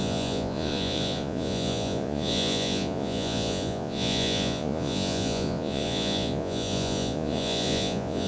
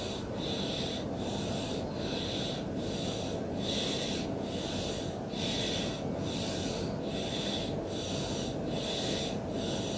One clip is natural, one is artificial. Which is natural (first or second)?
second